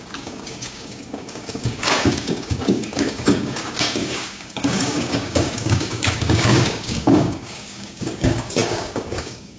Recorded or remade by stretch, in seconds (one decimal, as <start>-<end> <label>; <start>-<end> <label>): 0.0-9.6 remade